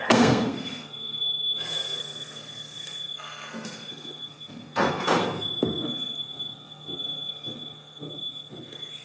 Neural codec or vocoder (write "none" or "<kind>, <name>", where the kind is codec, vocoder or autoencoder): codec, SNAC